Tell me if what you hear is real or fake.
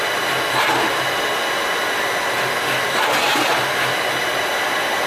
real